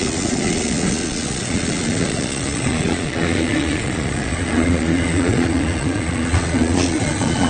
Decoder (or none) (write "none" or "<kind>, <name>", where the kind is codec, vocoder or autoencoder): vocoder, Vocos